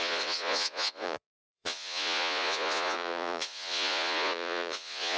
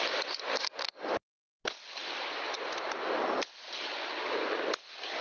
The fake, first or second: first